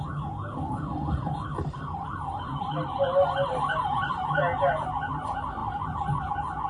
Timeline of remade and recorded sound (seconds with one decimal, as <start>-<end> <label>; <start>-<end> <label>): 0.0-0.9 recorded; 0.9-4.1 remade; 4.1-5.6 recorded; 5.6-6.3 remade; 6.3-6.7 recorded